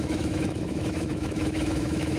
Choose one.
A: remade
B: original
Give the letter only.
A